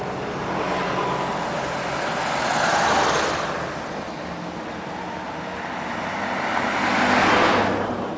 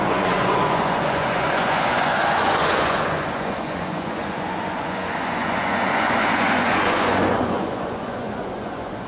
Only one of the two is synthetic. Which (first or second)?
second